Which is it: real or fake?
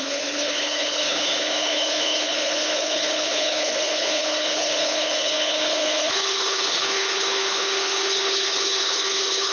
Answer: fake